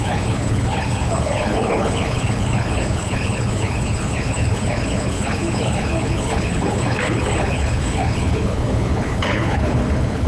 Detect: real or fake fake